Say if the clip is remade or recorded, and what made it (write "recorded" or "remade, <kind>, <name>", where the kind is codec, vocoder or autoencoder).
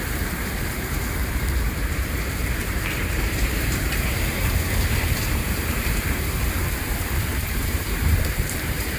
remade, vocoder, BigVGAN v2